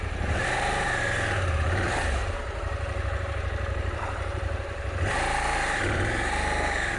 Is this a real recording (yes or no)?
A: no